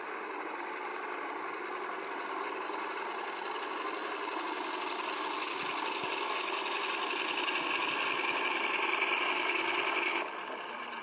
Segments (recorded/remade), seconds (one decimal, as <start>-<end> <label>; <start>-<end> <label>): 0.0-3.1 remade; 3.1-8.2 recorded; 8.2-11.0 remade